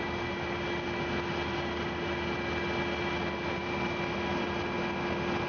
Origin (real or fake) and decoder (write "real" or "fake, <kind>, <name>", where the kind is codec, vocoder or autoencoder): real